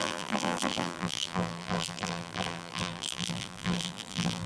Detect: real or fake fake